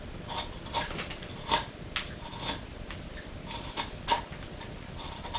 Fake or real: real